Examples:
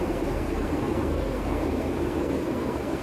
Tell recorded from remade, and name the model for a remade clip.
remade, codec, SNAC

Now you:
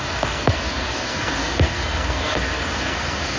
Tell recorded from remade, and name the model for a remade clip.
remade, codec, SNAC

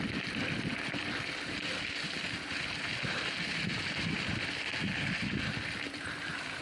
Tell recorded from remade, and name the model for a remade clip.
recorded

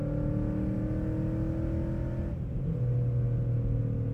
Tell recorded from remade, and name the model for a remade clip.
recorded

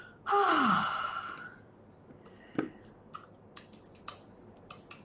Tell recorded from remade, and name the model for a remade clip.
recorded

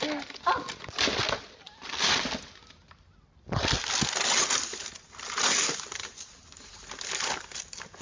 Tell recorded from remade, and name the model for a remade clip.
recorded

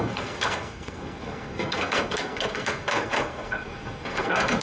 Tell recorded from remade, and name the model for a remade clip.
remade, codec, SNAC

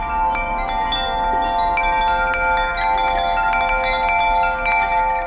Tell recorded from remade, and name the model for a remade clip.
recorded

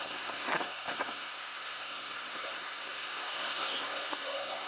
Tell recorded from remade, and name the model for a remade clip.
remade, codec, SNAC